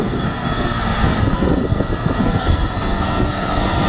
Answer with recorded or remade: remade